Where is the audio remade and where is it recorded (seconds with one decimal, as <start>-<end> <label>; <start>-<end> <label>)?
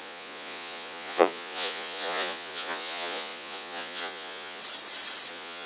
0.0-4.6 remade; 4.6-5.3 recorded; 5.3-5.7 remade